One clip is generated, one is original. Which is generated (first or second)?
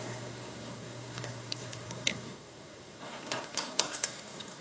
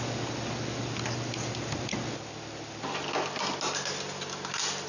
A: first